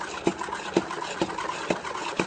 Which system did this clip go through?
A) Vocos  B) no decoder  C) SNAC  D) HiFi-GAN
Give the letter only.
B